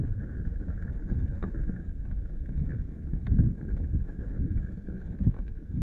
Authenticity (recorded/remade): remade